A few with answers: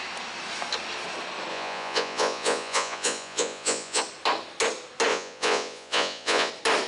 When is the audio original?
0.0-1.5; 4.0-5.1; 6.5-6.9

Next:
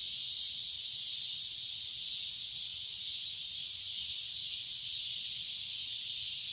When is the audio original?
1.4-2.7; 5.9-6.5

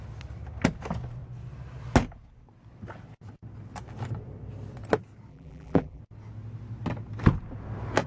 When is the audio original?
0.0-5.3; 6.0-8.1

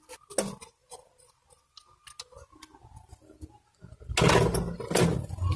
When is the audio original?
0.0-5.6

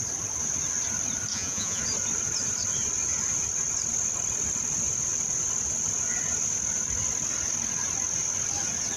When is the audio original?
0.0-1.3; 1.8-9.0